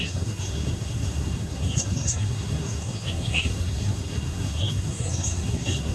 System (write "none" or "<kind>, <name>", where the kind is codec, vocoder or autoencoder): codec, SNAC